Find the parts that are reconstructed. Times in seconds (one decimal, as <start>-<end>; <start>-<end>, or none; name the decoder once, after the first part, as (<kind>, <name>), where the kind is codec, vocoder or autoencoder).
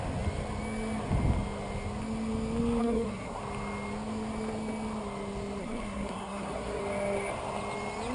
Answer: 2.8-3.4 (codec, SNAC); 5.6-6.8